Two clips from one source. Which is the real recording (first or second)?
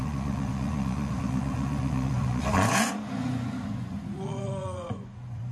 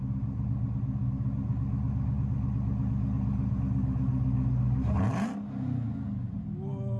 second